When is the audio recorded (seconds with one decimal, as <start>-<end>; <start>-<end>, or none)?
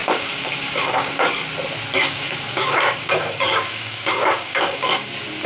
1.2-2.0; 5.1-5.5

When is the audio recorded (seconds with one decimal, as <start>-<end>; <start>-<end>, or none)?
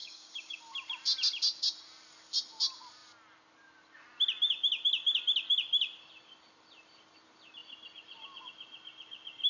0.6-9.5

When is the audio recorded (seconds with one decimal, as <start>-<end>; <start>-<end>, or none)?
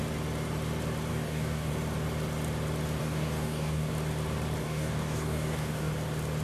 0.0-1.1; 1.7-3.0; 3.9-4.6; 5.9-6.4